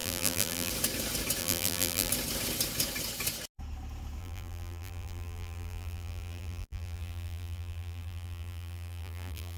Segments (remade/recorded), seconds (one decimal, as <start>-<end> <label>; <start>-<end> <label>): 0.0-0.7 remade; 0.7-1.4 recorded; 1.4-2.1 remade; 2.1-4.2 recorded; 4.2-9.6 remade

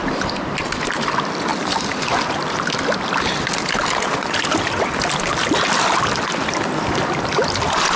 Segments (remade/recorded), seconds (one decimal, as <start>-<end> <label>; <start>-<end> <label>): 0.0-8.0 recorded

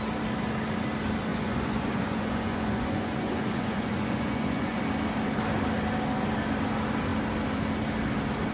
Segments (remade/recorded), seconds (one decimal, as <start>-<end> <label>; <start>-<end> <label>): 0.0-1.3 recorded; 1.3-4.8 remade; 4.8-8.5 recorded

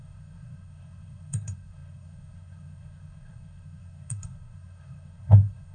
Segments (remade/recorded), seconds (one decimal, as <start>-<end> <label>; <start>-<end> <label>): 0.0-5.7 remade

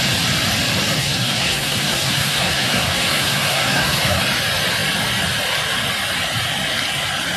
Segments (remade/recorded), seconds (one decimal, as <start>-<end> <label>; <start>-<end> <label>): 0.0-1.0 recorded; 1.0-4.2 remade; 4.2-7.4 recorded

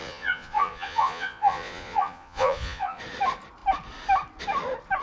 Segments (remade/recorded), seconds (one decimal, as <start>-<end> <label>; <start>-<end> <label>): 0.0-3.0 remade; 3.0-5.0 recorded

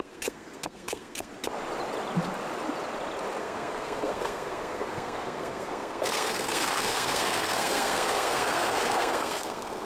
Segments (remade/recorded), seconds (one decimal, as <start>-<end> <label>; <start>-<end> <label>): 0.0-1.3 remade; 1.3-3.4 recorded; 3.4-9.9 remade

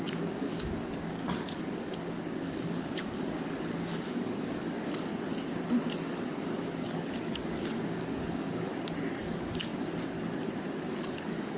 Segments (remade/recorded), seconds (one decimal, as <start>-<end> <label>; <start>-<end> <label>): 0.0-5.1 remade; 5.1-5.9 recorded; 5.9-8.7 remade; 8.7-9.2 recorded; 9.2-9.7 remade; 9.7-10.9 recorded; 10.9-11.6 remade